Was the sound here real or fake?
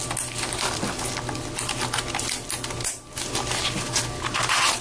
real